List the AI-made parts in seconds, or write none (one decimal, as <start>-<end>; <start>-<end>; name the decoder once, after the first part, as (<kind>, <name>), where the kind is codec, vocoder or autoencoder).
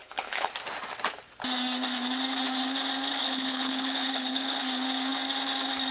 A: 0.0-0.5 (codec, HILCodec); 3.2-4.6